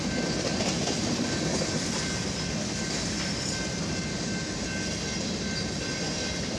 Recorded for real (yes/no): yes